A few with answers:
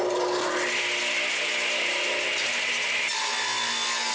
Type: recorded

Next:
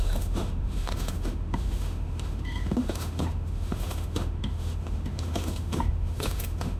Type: remade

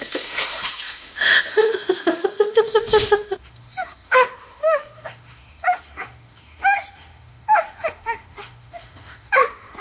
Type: remade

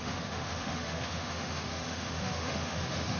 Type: remade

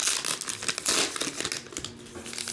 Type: recorded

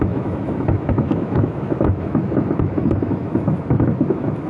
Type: remade